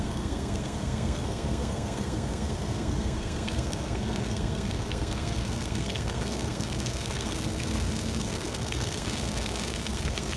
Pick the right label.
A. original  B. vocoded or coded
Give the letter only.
B